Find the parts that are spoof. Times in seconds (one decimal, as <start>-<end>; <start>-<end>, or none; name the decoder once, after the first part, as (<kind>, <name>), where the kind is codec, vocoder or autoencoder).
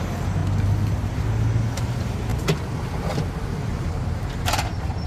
0.0-0.4 (vocoder, BigVGAN v2); 1.8-2.3; 3.6-5.1